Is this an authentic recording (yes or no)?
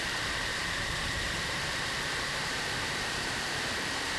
no